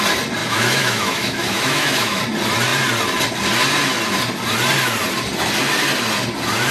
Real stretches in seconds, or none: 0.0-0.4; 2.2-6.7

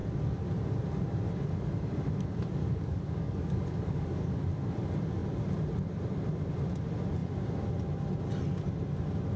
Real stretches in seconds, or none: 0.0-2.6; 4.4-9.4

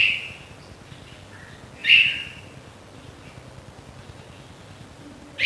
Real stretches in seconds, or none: 0.0-1.8; 3.2-5.5

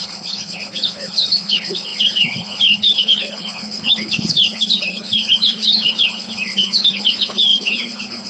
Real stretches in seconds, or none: none

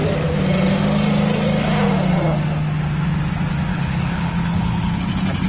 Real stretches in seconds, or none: 0.0-3.7; 5.0-5.5

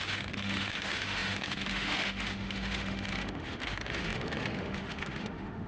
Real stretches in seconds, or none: none